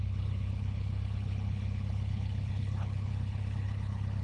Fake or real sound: fake